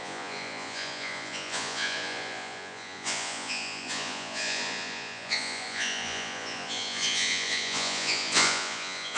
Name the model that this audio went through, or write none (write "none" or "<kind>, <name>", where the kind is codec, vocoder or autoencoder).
vocoder, Vocos